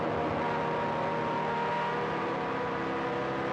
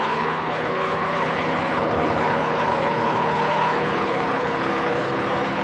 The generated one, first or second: second